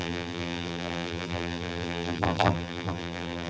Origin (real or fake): fake